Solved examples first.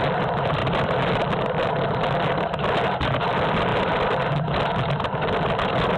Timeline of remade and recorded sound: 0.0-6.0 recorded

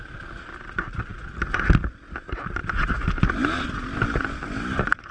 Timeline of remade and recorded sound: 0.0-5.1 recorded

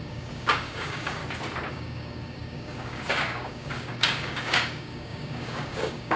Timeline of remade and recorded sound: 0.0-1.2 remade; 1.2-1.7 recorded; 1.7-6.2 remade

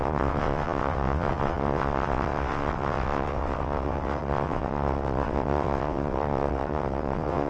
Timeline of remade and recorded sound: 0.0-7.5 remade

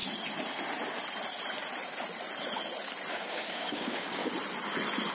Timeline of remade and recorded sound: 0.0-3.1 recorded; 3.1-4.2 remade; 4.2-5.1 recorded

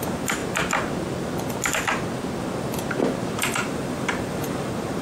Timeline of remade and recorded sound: 0.0-0.4 remade; 0.4-3.4 recorded; 3.4-5.0 remade

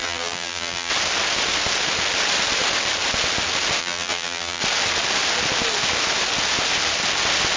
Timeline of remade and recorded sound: 0.0-0.9 remade; 0.9-3.8 recorded; 3.8-4.6 remade; 4.6-7.6 recorded

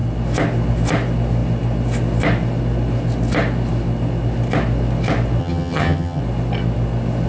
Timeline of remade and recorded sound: 0.0-5.4 recorded; 5.4-6.2 remade; 6.2-7.3 recorded